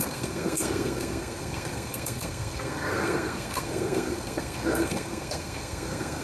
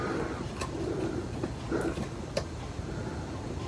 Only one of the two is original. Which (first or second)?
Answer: second